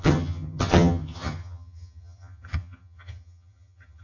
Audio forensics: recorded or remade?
remade